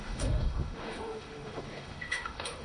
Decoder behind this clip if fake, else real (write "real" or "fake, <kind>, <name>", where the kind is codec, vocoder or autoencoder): fake, autoencoder, DAC-VAE